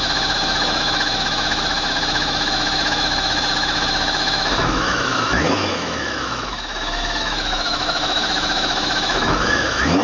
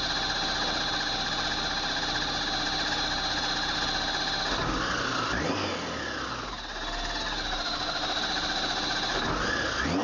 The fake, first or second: first